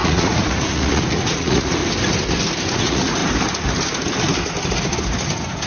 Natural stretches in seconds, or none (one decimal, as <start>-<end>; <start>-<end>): 1.8-2.7; 3.2-5.7